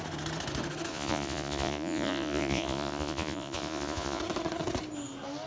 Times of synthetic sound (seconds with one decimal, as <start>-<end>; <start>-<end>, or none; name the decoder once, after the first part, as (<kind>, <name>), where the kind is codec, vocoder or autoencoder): 0.9-4.2 (vocoder, Vocos)